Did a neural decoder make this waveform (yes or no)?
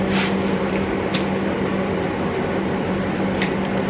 no